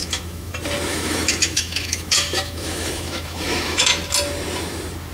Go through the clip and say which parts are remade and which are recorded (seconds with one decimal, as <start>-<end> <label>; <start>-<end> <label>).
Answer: 0.0-0.5 remade; 0.5-0.9 recorded; 0.9-4.0 remade; 4.0-5.1 recorded